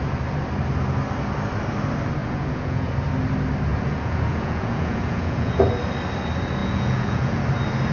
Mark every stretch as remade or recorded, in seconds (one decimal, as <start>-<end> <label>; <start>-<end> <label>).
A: 0.0-2.2 recorded; 2.2-2.9 remade; 2.9-3.7 recorded; 3.7-5.6 remade; 5.6-6.6 recorded; 6.6-7.4 remade; 7.4-7.9 recorded